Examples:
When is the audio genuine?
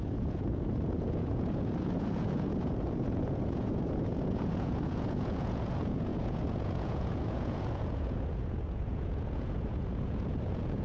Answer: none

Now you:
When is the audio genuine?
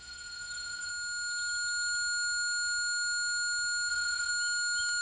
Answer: 0.9-3.9; 4.3-5.0